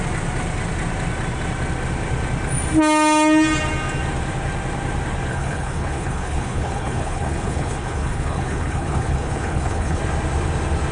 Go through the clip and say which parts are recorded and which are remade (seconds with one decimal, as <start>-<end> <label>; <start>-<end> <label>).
0.0-5.3 recorded; 5.3-10.0 remade; 10.0-10.9 recorded